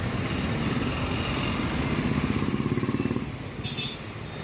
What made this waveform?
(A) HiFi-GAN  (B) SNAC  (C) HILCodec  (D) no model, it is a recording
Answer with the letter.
D